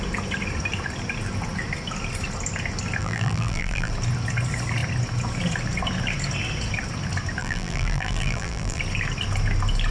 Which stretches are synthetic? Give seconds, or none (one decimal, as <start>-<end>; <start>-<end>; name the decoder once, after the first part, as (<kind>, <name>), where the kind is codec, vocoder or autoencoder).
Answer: 3.0-3.9 (vocoder, BigVGAN v2); 7.4-8.8